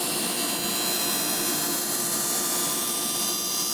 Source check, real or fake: real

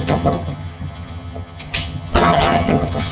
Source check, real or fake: fake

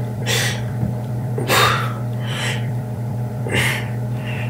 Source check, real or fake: fake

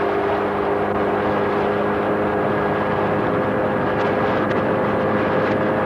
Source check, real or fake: real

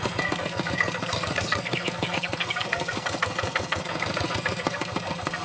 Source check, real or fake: fake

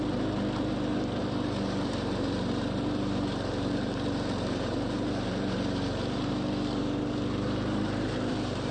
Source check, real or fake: fake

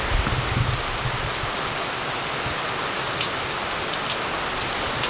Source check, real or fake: real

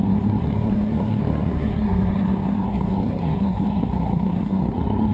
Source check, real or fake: fake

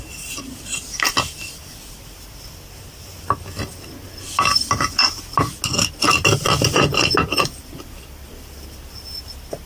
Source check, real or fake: real